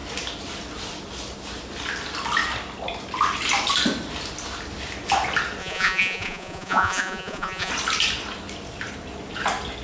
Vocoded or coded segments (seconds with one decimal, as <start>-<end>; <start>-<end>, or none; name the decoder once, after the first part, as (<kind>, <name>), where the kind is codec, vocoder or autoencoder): 5.6-7.7 (vocoder, Vocos)